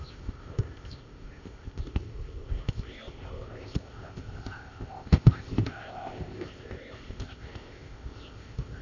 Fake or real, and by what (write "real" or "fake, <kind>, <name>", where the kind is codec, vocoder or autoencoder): fake, codec, ZipCodec